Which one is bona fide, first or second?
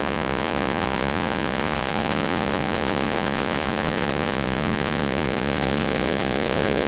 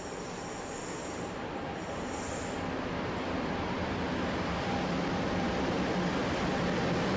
second